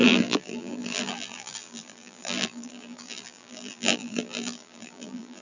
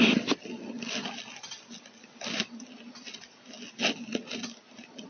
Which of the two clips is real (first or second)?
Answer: second